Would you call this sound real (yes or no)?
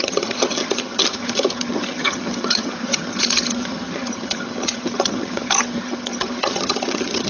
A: no